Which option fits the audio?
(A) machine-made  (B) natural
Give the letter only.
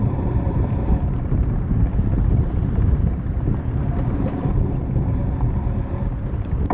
A